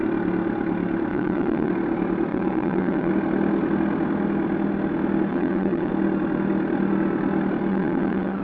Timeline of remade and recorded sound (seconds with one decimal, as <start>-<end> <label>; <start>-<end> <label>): 0.0-1.1 recorded; 1.1-1.7 remade; 1.7-2.3 recorded; 2.3-3.1 remade; 3.1-5.3 recorded; 5.3-5.9 remade; 5.9-7.7 recorded; 7.7-8.4 remade